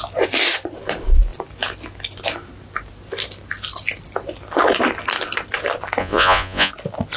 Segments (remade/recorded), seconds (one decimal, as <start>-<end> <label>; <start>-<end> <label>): 0.0-6.0 recorded; 6.0-6.7 remade; 6.7-7.2 recorded